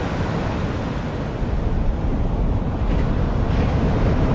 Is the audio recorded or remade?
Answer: recorded